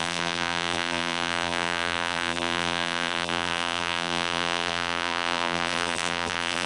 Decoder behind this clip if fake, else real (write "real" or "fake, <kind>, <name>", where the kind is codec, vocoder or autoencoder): fake, vocoder, BigVGAN v2